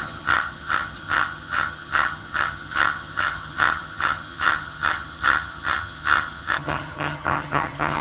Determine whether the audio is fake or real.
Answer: fake